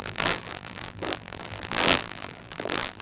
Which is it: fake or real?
fake